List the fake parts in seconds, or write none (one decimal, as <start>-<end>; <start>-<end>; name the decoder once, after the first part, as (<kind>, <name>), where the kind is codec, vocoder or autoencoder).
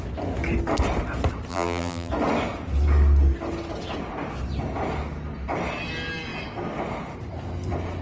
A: 1.5-2.1 (vocoder, BigVGAN v2)